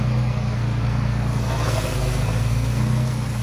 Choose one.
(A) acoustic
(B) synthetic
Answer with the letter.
B